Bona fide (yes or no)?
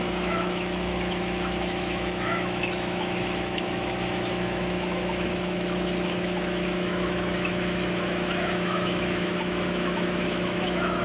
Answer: no